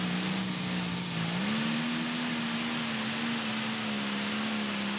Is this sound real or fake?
real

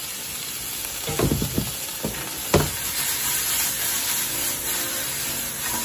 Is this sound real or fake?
real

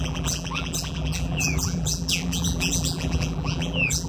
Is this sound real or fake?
fake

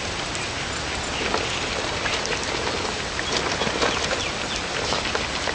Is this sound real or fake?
real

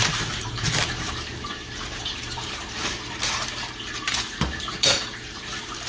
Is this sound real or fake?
fake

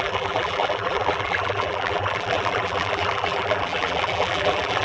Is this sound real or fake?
fake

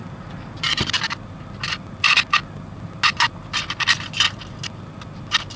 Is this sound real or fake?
real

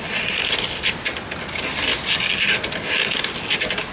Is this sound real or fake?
real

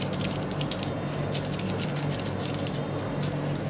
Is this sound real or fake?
real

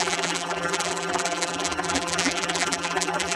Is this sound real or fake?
fake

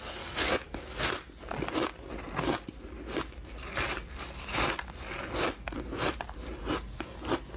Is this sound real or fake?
real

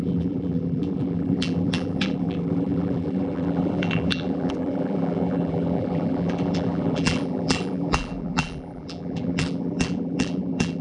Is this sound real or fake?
fake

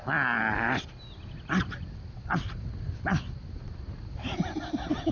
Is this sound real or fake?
real